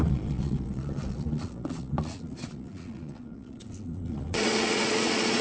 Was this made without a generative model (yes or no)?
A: no